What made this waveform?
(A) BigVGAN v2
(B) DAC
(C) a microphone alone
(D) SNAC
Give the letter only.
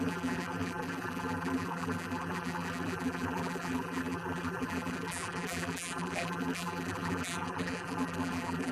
A